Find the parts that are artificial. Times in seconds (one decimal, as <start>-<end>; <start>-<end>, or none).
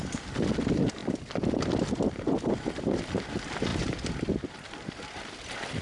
1.0-3.0; 3.7-5.8